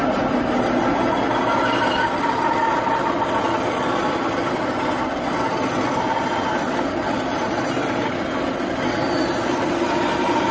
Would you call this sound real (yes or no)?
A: yes